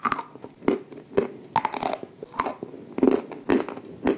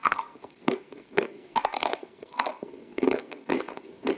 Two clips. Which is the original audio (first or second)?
first